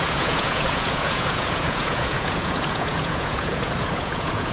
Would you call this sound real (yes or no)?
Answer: no